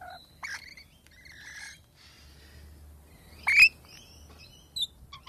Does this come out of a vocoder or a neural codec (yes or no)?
no